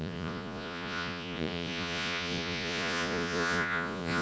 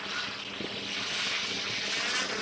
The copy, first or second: first